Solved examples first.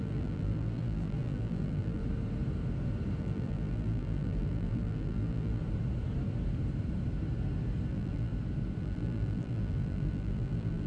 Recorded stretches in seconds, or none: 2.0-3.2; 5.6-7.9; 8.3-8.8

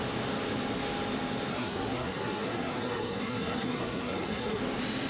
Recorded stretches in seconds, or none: 0.0-1.5; 4.6-5.1

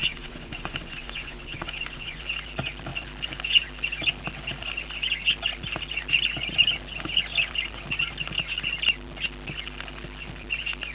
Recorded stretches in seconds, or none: 2.2-10.9